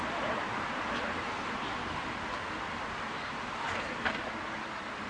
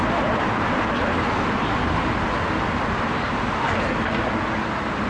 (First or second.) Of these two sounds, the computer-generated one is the first